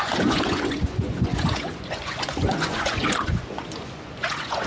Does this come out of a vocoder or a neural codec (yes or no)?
yes